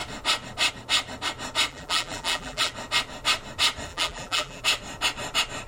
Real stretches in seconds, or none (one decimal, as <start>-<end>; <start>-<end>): 0.0-1.7; 2.7-3.9; 4.6-5.7